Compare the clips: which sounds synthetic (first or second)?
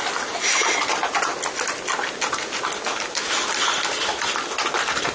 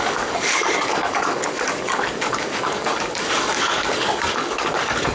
second